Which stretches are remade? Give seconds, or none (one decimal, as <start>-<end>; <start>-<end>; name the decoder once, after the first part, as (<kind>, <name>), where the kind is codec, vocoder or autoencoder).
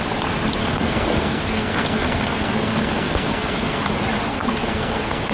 0.6-3.8 (codec, SNAC); 4.3-5.3